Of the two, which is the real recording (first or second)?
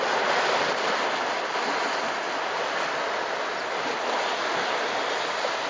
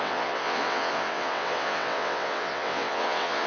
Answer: first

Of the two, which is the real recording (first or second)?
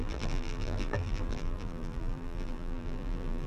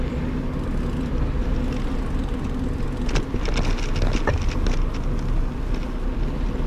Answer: second